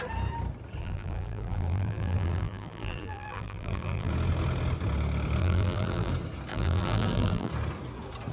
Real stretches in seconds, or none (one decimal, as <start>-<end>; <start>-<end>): 0.0-0.8; 4.1-5.4; 6.1-6.5; 7.5-8.3